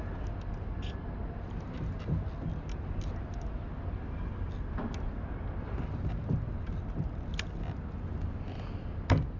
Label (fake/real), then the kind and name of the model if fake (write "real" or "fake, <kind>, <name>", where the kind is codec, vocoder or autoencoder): real